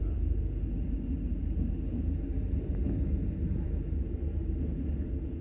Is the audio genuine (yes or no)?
yes